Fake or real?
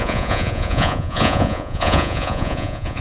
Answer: fake